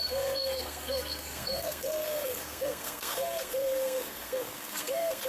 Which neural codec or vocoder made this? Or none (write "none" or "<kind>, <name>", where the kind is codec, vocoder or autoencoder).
codec, SNAC